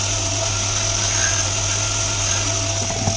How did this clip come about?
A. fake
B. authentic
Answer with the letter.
B